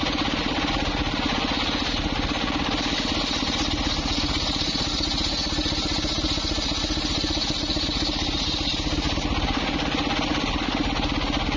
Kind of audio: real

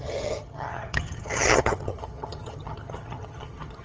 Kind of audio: fake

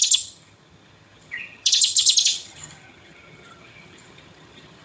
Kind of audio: fake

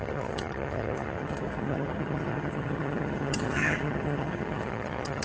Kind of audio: fake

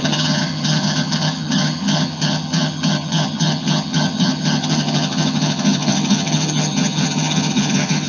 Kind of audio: fake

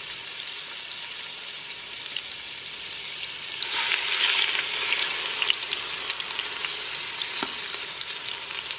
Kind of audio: real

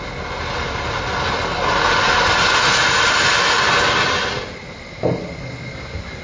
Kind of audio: real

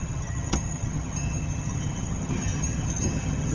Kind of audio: fake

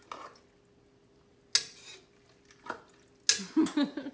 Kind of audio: real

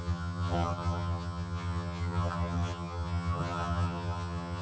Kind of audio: fake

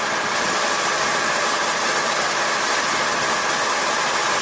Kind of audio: real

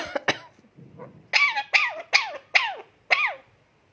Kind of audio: real